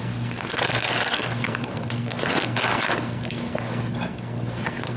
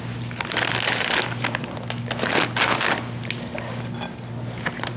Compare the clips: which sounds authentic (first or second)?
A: second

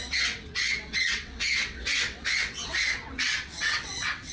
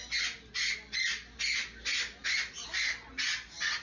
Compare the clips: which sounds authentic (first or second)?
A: second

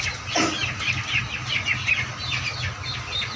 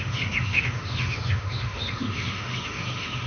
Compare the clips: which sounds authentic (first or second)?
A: first